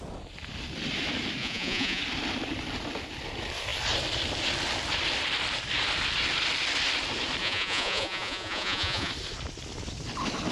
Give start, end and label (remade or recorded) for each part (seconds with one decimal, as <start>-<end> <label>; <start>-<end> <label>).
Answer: 0.0-1.4 recorded; 1.4-2.0 remade; 2.0-7.4 recorded; 7.4-9.1 remade; 9.1-10.5 recorded